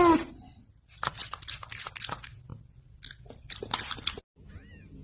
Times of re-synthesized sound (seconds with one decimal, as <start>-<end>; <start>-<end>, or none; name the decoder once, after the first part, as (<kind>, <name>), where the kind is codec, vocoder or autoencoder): none